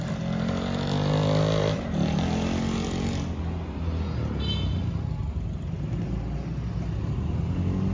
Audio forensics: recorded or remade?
recorded